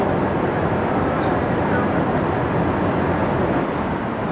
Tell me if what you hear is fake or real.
real